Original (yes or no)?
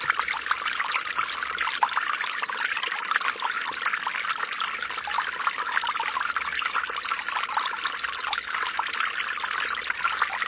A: yes